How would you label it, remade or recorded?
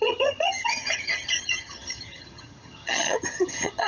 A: remade